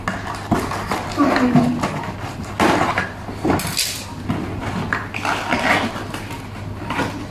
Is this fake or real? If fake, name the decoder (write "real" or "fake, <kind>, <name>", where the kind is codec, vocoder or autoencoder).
real